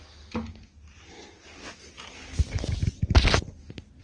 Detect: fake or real real